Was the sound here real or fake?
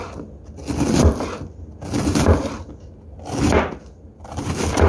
real